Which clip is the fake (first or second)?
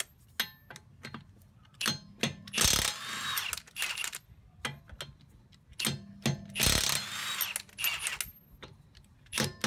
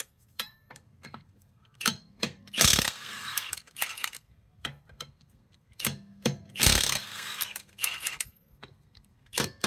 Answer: second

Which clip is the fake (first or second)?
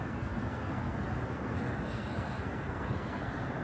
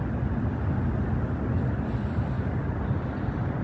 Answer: first